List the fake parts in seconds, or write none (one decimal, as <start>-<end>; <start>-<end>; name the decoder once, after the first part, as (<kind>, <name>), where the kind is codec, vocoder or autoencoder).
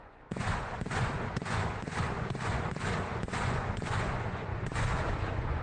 0.0-5.6 (vocoder, Vocos)